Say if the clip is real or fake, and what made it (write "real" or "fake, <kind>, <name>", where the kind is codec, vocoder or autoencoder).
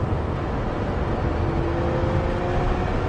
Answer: real